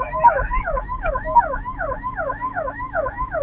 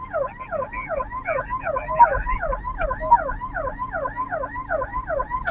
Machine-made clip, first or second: first